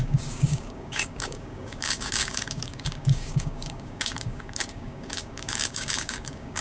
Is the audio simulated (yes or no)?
yes